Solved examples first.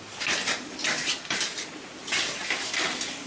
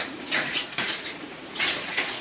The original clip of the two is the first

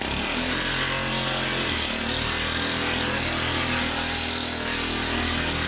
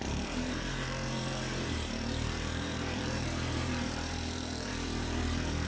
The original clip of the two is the first